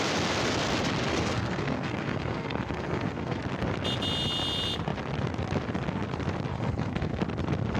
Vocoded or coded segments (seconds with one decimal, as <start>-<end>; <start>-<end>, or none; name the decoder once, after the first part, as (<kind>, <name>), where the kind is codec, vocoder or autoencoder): 1.1-3.4 (codec, SNAC); 6.5-7.2